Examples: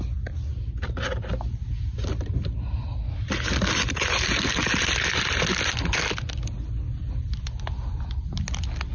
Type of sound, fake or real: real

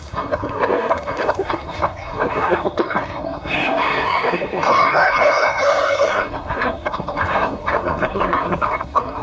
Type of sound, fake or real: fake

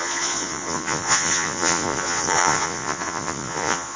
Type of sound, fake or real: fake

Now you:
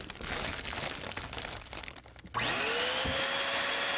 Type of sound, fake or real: real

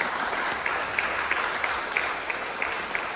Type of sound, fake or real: real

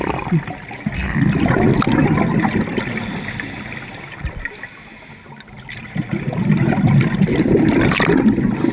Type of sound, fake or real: real